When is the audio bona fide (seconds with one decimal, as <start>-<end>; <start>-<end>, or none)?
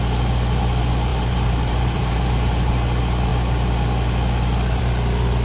0.0-1.1; 2.7-5.4